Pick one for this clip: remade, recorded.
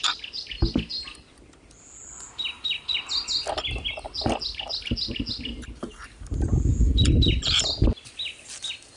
recorded